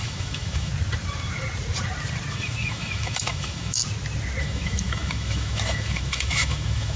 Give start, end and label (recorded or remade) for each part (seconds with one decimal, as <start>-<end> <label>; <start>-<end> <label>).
0.0-0.7 remade; 0.7-2.3 recorded; 2.3-3.8 remade; 3.8-4.4 recorded; 4.4-7.0 remade